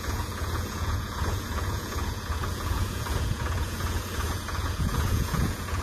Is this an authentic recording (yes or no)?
no